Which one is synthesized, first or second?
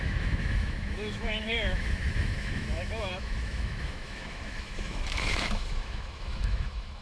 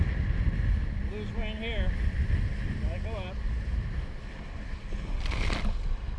first